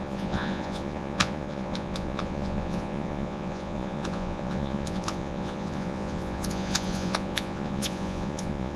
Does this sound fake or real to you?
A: fake